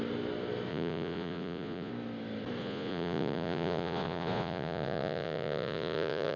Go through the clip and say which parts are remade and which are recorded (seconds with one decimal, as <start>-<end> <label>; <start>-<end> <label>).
0.0-0.7 recorded; 0.7-1.9 remade; 1.9-2.6 recorded; 2.6-6.4 remade